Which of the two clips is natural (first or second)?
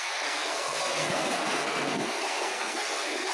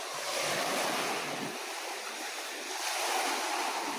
second